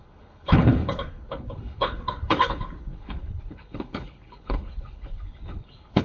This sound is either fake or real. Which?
fake